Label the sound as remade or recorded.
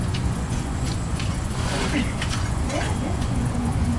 remade